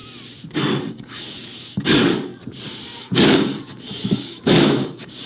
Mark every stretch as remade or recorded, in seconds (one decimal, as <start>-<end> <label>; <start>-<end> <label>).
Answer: 0.0-0.8 recorded; 0.8-2.3 remade; 2.3-3.0 recorded; 3.0-5.3 remade